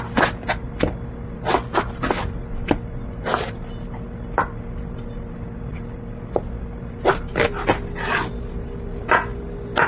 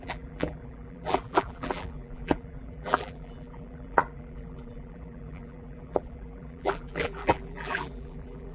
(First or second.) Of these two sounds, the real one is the first